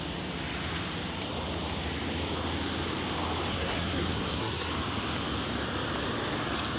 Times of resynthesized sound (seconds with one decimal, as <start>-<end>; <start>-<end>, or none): 3.5-4.7